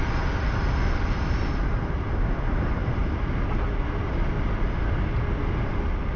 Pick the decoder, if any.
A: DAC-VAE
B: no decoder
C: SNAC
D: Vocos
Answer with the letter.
B